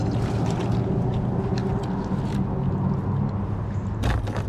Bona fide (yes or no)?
yes